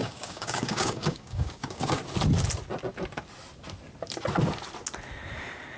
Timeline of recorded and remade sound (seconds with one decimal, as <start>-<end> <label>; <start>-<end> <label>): 0.0-2.0 remade; 2.0-5.8 recorded